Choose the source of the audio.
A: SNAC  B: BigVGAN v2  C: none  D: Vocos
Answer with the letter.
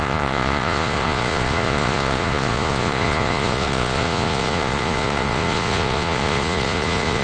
D